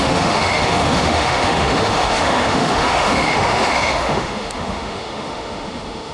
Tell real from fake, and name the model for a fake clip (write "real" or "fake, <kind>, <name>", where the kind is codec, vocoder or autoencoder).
fake, autoencoder, DAC-VAE